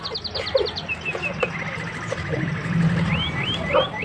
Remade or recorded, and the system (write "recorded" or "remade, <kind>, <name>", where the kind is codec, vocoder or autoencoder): recorded